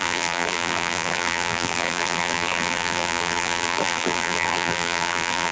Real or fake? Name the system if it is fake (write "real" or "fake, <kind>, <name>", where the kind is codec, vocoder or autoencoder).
fake, vocoder, BigVGAN v2